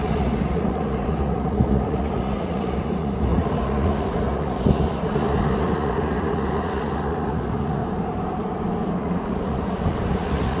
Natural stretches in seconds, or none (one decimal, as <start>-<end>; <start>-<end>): 7.8-9.0